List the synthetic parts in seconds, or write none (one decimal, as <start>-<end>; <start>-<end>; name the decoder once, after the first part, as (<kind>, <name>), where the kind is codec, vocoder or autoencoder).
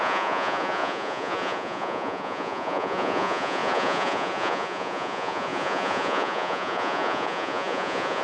0.0-8.2 (vocoder, Vocos)